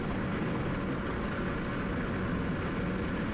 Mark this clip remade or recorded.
recorded